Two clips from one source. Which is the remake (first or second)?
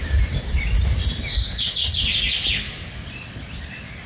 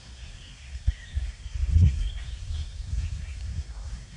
second